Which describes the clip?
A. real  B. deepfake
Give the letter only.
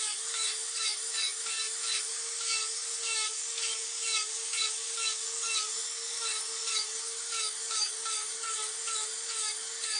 B